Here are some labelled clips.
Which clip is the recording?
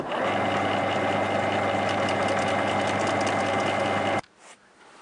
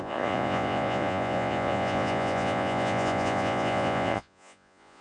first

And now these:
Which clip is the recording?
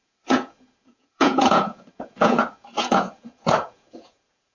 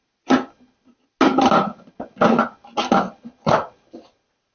second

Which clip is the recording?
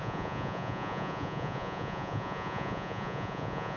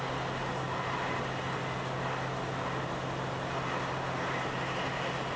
second